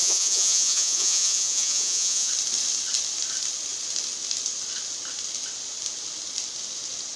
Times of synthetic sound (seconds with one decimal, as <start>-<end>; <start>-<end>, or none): 0.0-2.3